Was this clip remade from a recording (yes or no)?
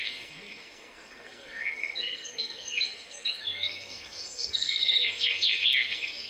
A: yes